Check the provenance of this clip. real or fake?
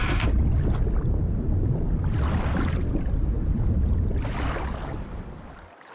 real